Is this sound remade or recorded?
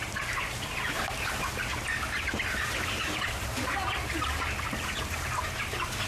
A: recorded